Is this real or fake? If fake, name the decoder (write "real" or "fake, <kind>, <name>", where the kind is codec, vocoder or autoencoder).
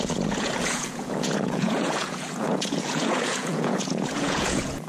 fake, vocoder, Vocos